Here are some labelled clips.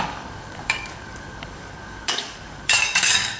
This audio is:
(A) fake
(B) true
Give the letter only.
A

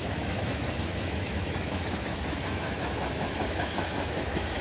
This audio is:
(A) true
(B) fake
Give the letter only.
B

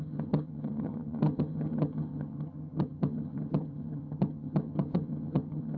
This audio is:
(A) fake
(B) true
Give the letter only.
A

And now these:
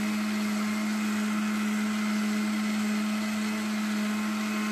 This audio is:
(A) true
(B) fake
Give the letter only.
A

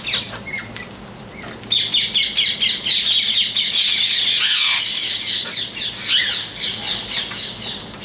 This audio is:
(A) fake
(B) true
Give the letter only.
B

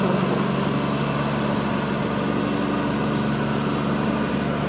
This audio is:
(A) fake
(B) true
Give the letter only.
B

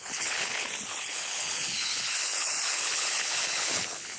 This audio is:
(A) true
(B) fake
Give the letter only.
B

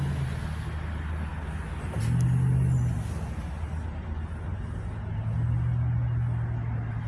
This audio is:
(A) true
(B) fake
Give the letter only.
A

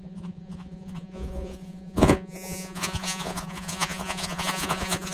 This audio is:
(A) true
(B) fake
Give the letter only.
B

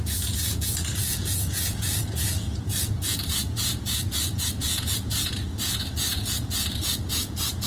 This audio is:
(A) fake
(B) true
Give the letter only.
A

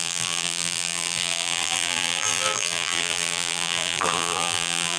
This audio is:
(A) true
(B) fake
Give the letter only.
B